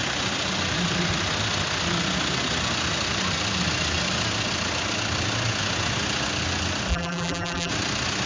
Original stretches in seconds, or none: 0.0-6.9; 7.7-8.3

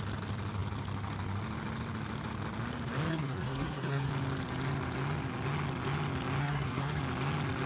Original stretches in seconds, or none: 0.0-3.1; 4.1-6.4; 7.0-7.7

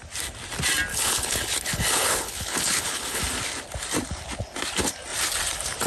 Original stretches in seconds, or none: 0.0-0.9; 3.2-5.9

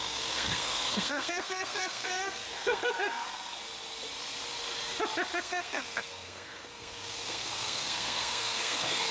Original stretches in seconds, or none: 3.6-5.4

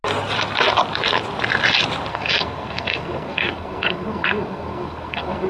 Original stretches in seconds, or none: 0.0-2.1

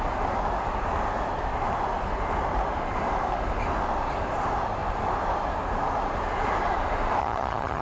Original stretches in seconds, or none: 0.0-7.2

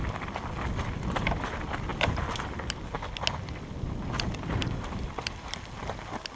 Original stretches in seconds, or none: 0.0-6.3